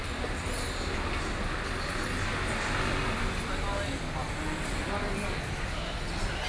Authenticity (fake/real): real